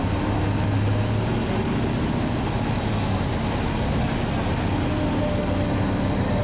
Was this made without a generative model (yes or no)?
yes